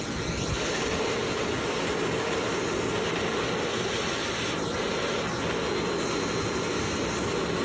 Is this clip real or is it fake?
real